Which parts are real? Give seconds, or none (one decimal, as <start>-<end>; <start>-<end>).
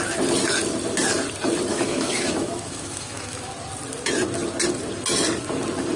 0.0-1.7; 3.5-6.0